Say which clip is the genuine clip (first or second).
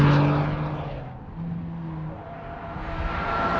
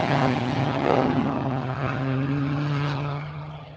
first